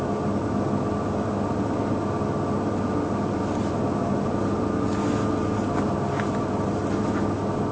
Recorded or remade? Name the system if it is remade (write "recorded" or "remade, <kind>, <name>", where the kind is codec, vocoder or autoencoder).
recorded